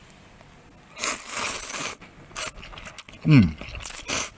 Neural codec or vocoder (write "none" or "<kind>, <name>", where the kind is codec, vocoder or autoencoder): none